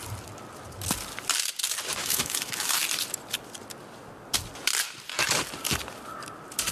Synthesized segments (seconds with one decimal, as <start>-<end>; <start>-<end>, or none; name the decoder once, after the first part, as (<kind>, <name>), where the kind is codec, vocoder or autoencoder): 2.0-2.8 (autoencoder, DAC-VAE)